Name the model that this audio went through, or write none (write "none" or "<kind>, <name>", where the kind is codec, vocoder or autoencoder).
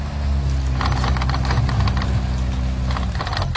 none